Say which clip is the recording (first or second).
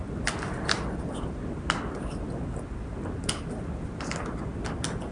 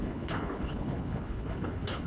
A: first